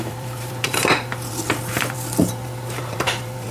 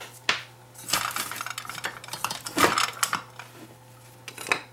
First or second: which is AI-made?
first